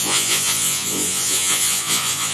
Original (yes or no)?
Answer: no